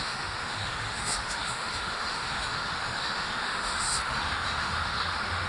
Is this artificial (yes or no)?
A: yes